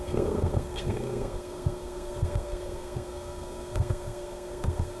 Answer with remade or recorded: remade